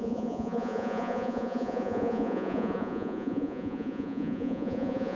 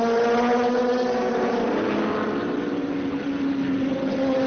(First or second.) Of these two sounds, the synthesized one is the first